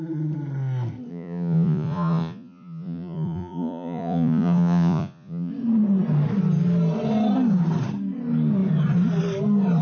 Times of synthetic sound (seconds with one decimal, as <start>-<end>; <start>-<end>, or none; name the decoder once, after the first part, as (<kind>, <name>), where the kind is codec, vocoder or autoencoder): 1.1-5.5 (vocoder, Vocos)